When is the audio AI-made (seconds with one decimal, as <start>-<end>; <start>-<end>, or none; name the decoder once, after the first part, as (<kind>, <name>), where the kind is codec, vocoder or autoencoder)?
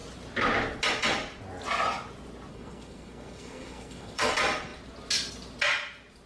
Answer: 2.5-4.3 (codec, SNAC)